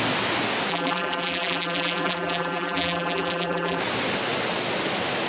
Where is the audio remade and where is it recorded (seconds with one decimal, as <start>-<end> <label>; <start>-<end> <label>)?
0.0-0.7 recorded; 0.7-3.8 remade; 3.8-5.3 recorded